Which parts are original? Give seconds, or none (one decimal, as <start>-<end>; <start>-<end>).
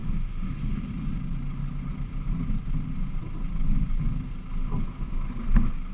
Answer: 0.9-5.9